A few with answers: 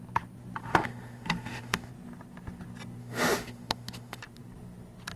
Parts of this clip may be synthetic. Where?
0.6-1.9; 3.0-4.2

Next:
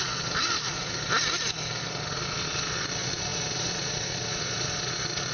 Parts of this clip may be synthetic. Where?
0.0-1.1; 1.8-5.3